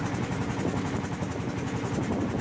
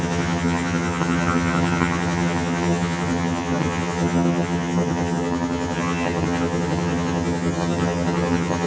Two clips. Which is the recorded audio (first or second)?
first